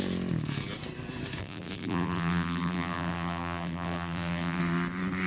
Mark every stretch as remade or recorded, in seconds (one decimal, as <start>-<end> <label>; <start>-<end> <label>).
0.0-1.4 recorded; 1.4-4.6 remade; 4.6-5.3 recorded